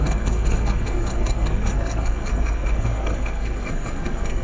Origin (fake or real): fake